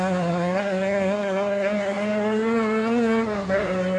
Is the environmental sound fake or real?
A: fake